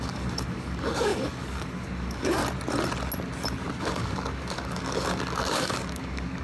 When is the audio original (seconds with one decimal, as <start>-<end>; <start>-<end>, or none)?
2.4-3.8